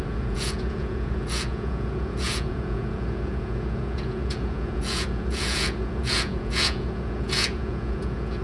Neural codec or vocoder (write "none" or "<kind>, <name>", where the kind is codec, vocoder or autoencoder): vocoder, Vocos